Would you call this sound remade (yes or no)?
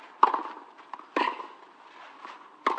no